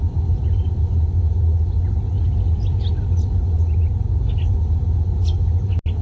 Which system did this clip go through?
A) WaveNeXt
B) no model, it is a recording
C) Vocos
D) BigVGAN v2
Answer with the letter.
B